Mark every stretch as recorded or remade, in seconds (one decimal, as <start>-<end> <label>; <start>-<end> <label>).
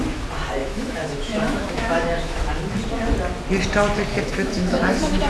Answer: 0.0-0.6 recorded; 0.6-2.4 remade; 2.4-4.1 recorded; 4.1-5.3 remade